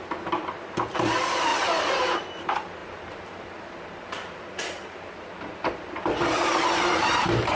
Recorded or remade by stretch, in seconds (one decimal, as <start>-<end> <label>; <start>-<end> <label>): 0.0-1.5 recorded; 1.5-2.1 remade; 2.1-2.8 recorded; 2.8-7.6 remade